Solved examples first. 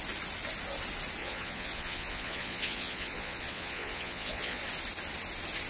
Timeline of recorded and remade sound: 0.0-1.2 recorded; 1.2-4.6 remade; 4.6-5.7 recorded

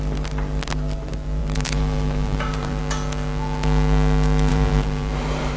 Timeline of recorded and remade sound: 0.0-1.4 recorded; 1.4-2.8 remade; 2.8-4.5 recorded; 4.5-5.6 remade